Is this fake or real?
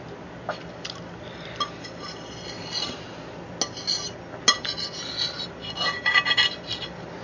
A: real